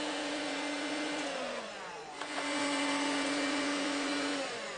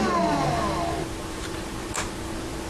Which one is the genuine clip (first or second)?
second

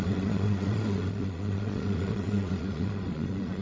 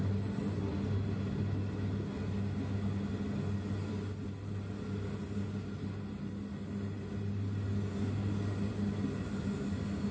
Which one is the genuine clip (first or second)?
second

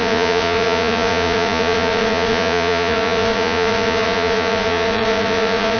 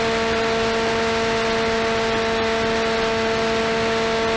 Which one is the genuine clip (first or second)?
second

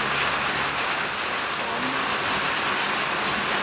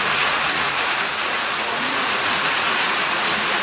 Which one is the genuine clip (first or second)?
first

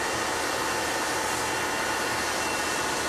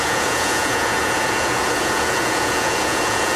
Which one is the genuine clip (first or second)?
first